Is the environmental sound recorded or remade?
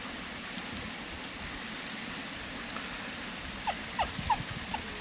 recorded